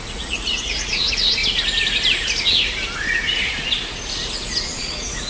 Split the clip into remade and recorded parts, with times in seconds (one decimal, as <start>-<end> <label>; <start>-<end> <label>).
0.0-1.4 remade; 1.4-4.6 recorded; 4.6-5.3 remade